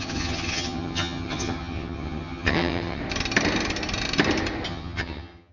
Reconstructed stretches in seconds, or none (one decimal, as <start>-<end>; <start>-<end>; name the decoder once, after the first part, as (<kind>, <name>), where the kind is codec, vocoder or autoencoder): 0.0-3.0 (vocoder, HiFi-GAN); 4.7-5.5